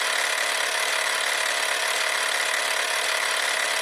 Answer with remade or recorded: recorded